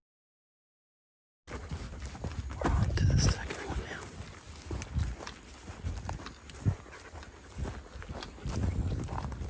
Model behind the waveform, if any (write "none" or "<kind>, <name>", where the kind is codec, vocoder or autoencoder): none